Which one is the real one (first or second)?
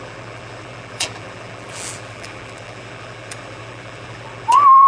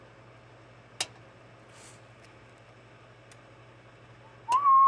second